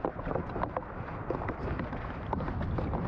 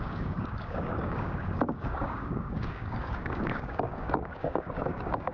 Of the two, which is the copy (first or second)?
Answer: second